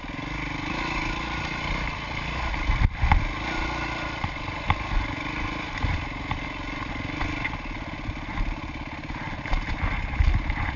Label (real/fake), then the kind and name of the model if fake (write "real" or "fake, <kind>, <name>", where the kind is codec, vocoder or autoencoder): real